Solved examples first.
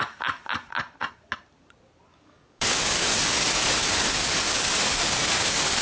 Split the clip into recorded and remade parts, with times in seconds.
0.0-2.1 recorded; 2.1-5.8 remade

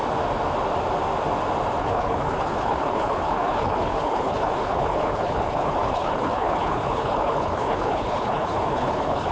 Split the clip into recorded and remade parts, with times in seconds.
0.0-1.8 recorded; 1.8-9.3 remade

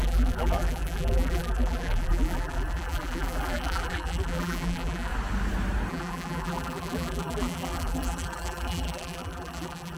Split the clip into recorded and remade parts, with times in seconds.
0.0-5.1 remade; 5.1-5.9 recorded; 5.9-10.0 remade

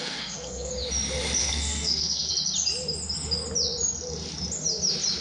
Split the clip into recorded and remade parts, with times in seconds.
0.0-0.7 remade; 0.7-1.4 recorded; 1.4-2.3 remade; 2.3-5.2 recorded